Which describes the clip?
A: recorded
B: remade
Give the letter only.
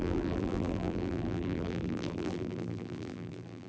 B